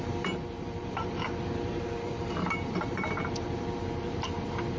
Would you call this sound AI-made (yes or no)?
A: yes